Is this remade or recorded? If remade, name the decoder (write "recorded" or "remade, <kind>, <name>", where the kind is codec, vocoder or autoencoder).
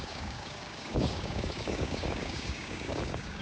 remade, codec, DAC